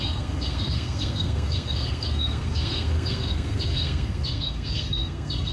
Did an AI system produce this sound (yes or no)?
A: yes